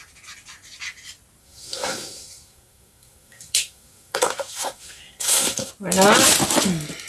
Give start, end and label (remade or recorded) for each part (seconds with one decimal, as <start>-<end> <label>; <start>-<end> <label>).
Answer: 0.0-1.4 recorded; 1.4-5.7 remade; 5.7-7.1 recorded